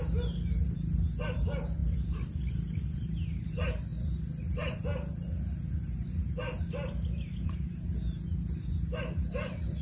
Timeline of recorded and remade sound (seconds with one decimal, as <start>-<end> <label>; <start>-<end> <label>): 0.0-9.8 recorded